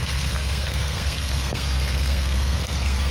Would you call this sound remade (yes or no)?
yes